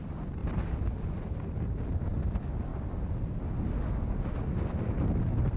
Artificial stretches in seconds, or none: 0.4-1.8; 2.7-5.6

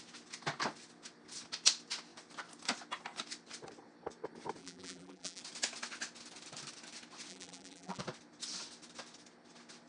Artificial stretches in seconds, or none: 4.6-5.4; 7.3-8.0

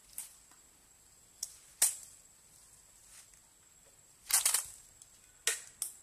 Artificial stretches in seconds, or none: none

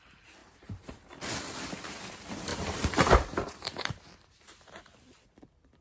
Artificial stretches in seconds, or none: 0.4-0.9; 2.5-4.8